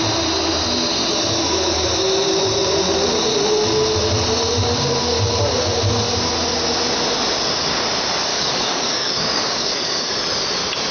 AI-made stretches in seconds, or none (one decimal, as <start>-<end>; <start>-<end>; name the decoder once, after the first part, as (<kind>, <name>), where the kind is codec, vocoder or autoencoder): 8.3-10.1 (codec, DAC)